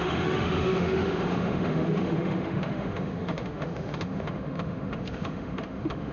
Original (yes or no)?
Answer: no